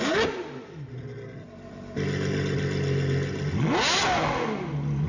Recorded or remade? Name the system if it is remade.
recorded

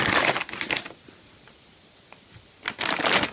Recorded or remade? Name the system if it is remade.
recorded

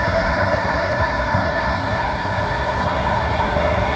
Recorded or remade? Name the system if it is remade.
remade, codec, SNAC